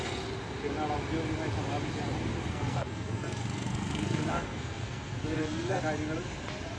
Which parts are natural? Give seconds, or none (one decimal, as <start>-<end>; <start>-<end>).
0.0-2.5; 5.8-6.8